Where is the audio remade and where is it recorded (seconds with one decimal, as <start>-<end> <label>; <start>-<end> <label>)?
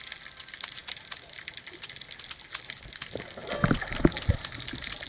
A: 0.0-5.1 recorded